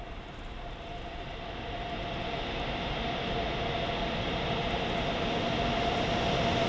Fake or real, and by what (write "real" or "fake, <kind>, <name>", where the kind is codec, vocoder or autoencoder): real